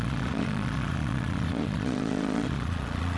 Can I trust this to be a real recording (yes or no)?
no